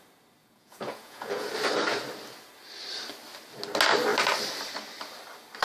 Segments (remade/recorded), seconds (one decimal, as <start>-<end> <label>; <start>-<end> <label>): 0.0-0.4 recorded; 0.4-1.5 remade; 1.5-5.6 recorded